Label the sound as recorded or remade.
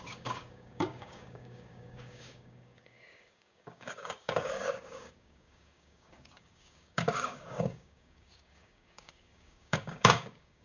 remade